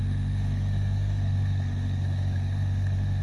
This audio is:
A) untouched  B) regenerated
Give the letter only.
B